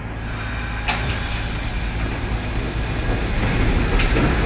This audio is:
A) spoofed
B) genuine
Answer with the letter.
B